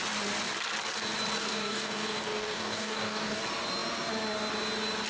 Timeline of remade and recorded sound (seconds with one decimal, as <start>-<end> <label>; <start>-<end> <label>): 0.0-1.4 recorded; 1.4-3.4 remade; 3.4-5.1 recorded